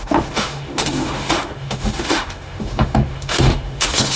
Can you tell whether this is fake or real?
fake